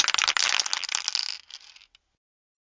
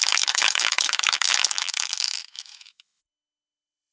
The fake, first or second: second